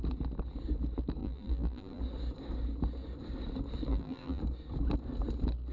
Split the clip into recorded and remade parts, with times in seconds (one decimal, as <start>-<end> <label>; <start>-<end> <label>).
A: 0.0-1.2 recorded; 1.2-2.0 remade; 2.0-3.9 recorded; 3.9-4.4 remade; 4.4-5.7 recorded